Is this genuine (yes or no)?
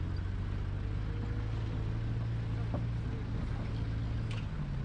yes